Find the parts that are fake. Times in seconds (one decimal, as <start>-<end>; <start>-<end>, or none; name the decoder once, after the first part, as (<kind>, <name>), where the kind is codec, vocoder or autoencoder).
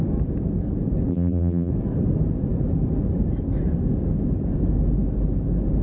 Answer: 1.1-1.7 (vocoder, BigVGAN v2)